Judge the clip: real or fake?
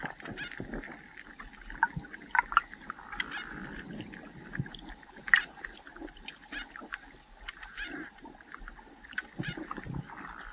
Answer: real